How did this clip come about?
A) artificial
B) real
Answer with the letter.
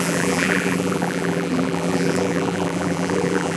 A